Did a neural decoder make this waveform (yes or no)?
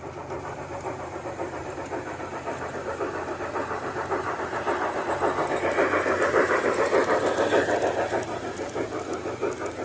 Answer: yes